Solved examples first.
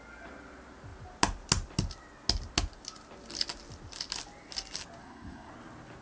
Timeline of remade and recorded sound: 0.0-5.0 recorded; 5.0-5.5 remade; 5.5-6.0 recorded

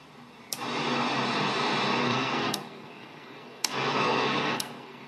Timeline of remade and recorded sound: 0.0-2.0 recorded; 2.0-5.1 remade

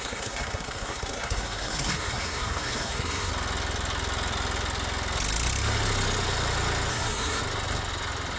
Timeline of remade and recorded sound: 0.0-3.3 remade; 3.3-6.9 recorded; 6.9-7.4 remade; 7.4-8.4 recorded

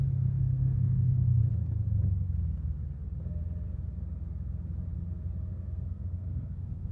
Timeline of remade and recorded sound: 0.0-1.4 remade; 1.4-5.5 recorded; 5.5-6.9 remade

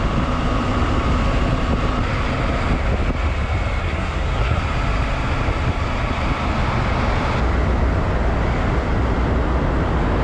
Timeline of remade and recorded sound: 0.0-3.8 recorded; 3.8-4.6 remade; 4.6-10.2 recorded

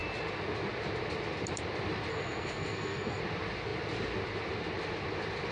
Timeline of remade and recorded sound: 0.0-2.1 recorded; 2.1-3.2 remade; 3.2-5.5 recorded

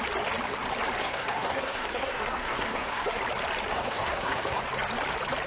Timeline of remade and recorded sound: 0.0-1.0 recorded; 1.0-3.2 remade; 3.2-3.7 recorded; 3.7-4.6 remade; 4.6-5.5 recorded